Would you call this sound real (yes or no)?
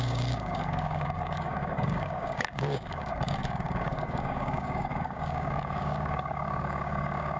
no